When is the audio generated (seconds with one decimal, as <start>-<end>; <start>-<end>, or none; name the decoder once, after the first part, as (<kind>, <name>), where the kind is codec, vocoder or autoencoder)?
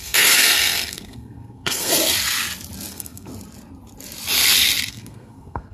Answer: 0.0-1.9 (codec, SNAC); 2.9-3.3; 4.9-5.7